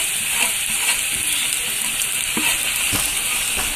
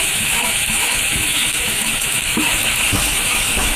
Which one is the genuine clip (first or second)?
first